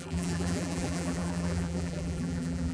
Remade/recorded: remade